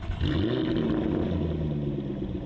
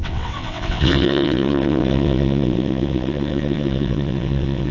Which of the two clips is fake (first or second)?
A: second